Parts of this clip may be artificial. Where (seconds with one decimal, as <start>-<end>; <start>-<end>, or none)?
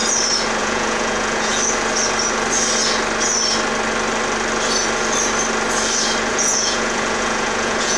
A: 0.6-1.5; 6.3-8.0